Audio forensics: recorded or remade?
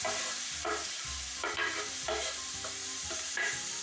remade